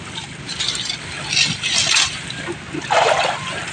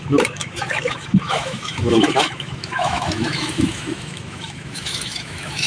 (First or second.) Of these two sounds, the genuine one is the first